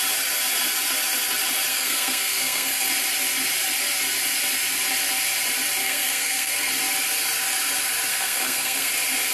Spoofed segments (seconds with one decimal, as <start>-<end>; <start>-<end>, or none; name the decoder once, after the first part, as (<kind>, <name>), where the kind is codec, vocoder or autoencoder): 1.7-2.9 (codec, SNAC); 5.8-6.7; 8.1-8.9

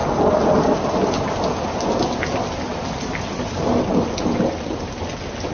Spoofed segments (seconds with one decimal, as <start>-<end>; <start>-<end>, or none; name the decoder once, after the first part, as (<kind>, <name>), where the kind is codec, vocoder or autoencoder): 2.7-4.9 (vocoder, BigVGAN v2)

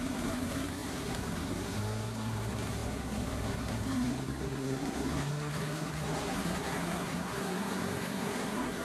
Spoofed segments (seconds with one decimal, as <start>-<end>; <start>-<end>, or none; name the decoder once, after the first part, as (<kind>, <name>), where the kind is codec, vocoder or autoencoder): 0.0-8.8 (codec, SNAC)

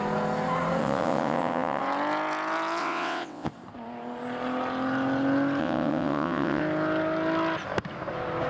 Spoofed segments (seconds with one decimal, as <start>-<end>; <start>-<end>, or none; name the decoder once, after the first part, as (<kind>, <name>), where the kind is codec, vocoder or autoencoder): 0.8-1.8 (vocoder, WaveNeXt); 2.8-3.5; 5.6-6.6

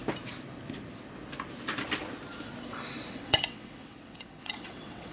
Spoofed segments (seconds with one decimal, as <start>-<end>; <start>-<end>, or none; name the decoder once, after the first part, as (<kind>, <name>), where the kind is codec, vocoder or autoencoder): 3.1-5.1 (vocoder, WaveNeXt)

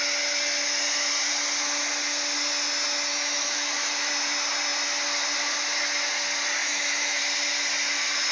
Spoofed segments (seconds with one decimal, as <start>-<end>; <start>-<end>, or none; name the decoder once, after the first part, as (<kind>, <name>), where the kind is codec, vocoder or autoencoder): 3.1-4.1 (autoencoder, DAC-VAE); 6.6-7.2